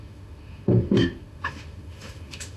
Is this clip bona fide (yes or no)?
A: no